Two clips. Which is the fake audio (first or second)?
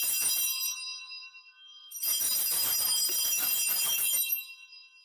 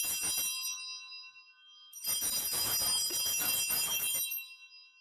first